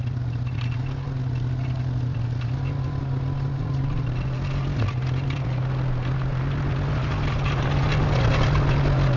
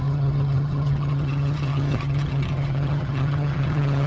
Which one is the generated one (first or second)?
second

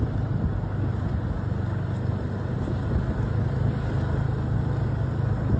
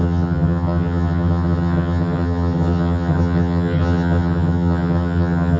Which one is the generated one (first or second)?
second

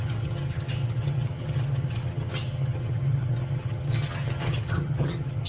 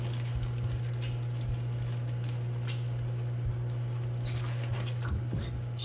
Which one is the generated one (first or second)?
first